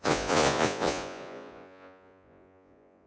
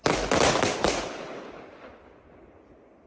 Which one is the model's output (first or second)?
first